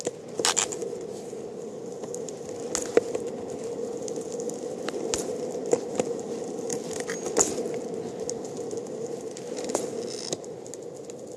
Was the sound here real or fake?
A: real